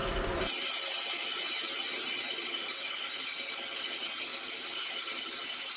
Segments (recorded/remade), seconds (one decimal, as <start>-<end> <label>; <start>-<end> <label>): 0.0-3.0 remade; 3.0-4.3 recorded; 4.3-5.2 remade; 5.2-5.8 recorded